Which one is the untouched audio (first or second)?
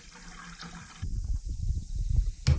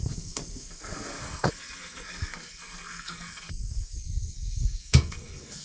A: first